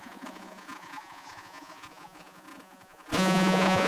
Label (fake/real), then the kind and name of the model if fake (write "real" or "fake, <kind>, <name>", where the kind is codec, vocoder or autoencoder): fake, vocoder, Vocos